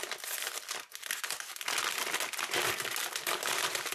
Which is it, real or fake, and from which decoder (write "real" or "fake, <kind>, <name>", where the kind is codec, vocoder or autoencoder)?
real